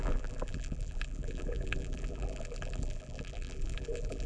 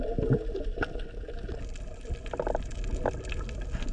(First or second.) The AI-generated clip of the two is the first